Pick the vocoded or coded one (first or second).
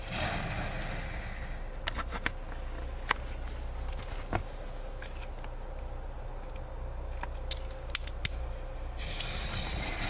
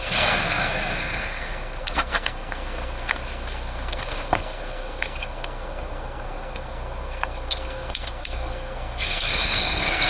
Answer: second